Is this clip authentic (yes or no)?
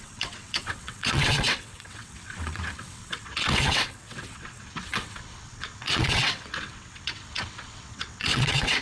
no